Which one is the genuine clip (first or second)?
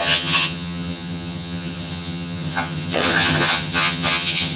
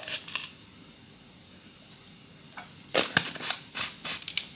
second